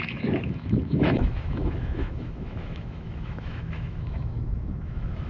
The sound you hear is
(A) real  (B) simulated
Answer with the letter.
B